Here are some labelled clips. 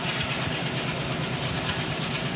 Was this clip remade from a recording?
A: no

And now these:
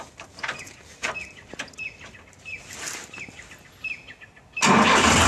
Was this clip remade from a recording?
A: no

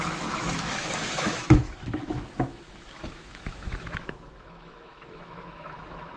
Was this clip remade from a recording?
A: yes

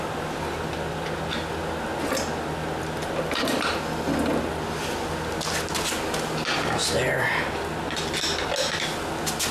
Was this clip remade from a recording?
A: no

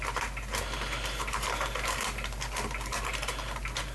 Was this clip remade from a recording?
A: no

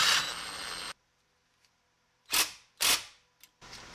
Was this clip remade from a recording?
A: no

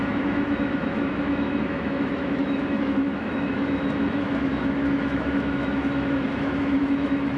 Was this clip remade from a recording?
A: yes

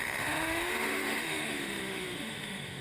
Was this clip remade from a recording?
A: yes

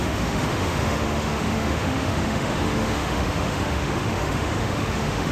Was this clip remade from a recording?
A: yes